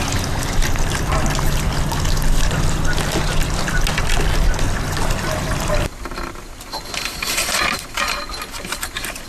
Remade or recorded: recorded